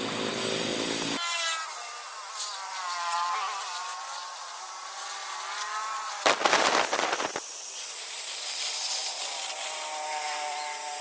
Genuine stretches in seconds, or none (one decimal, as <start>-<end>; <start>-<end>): 0.7-1.7; 5.2-6.7